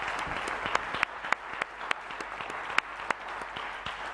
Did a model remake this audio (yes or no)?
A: no